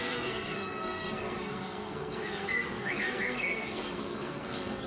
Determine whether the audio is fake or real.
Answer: fake